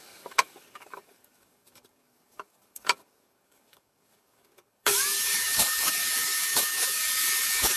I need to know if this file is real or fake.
fake